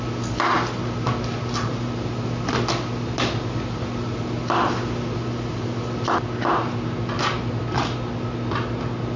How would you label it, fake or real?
real